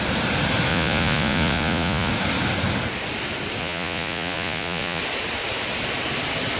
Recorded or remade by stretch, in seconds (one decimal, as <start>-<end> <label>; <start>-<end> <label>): 0.0-0.7 recorded; 0.7-2.1 remade; 2.1-3.6 recorded; 3.6-5.0 remade; 5.0-6.6 recorded